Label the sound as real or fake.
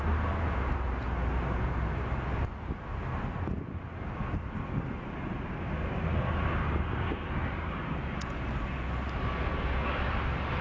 real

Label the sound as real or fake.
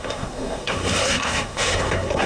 fake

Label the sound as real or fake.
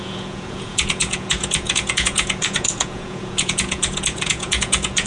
fake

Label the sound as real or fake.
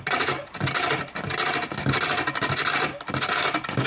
real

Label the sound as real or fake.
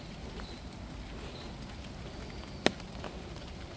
real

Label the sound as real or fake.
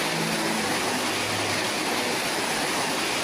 real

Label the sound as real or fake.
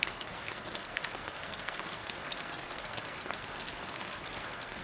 fake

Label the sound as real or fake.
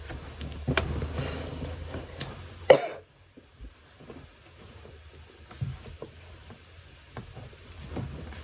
real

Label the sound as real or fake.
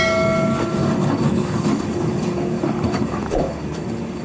fake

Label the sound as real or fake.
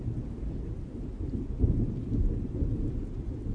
real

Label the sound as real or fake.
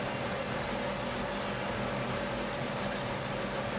real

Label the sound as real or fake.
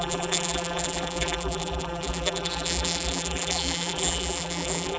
fake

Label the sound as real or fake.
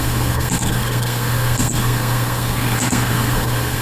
fake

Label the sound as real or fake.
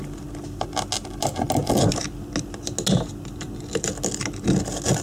real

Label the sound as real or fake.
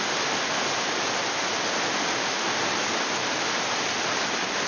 real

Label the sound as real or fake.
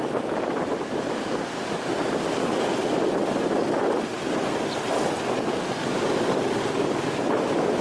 real